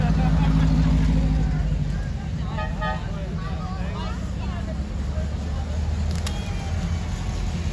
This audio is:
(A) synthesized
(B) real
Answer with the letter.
B